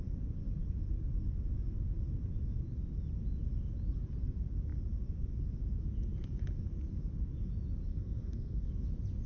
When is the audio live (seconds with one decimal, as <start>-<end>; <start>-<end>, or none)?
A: 0.0-7.9; 8.7-9.3